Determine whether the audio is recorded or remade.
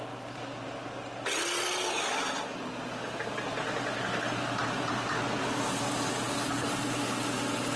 recorded